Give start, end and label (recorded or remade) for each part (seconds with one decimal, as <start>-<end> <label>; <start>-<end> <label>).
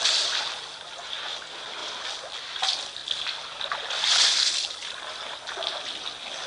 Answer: 0.0-6.5 recorded